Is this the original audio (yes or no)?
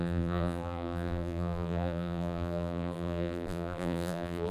no